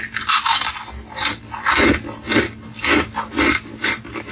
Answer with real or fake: real